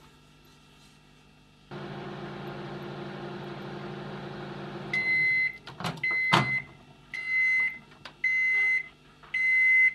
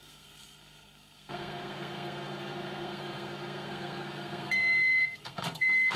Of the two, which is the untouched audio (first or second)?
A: first